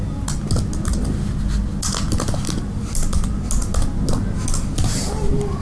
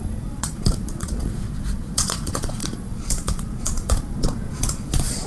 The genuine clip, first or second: first